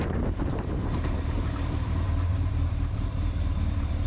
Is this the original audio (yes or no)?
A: no